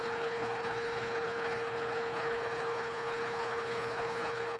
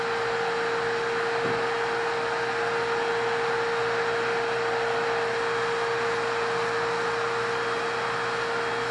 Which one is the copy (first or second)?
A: first